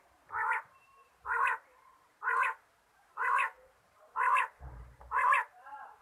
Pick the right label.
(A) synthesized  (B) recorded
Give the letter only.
A